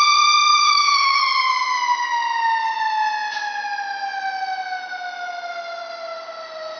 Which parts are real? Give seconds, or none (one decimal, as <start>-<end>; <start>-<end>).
0.0-0.5; 1.2-6.8